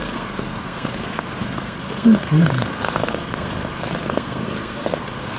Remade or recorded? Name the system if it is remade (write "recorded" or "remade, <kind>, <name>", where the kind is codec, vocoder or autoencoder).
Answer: remade, codec, SNAC